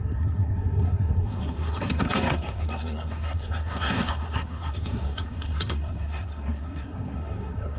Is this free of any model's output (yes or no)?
no